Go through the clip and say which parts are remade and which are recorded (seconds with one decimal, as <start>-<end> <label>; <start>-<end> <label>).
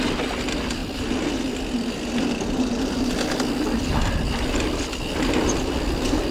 0.0-6.3 recorded